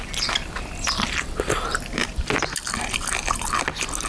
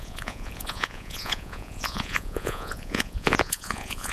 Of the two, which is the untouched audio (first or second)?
first